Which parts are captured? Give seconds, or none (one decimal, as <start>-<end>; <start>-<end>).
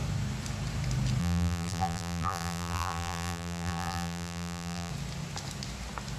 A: 0.0-1.2; 4.9-6.2